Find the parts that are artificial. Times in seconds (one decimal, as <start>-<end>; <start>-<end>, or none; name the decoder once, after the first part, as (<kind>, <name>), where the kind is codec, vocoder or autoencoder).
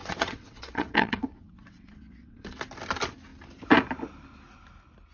0.0-2.6 (vocoder, WaveNeXt)